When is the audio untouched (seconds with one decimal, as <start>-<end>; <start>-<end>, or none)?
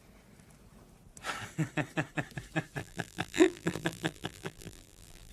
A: 0.0-2.8